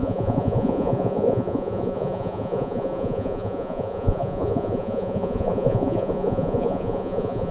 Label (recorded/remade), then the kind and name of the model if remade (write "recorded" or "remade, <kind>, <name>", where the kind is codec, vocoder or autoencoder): remade, vocoder, Vocos